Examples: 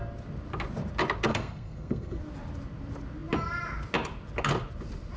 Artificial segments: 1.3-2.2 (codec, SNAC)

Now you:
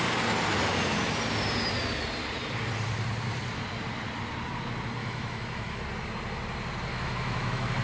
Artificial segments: 5.0-5.8 (autoencoder, DAC-VAE); 6.9-7.8